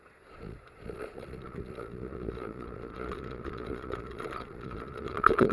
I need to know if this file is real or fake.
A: fake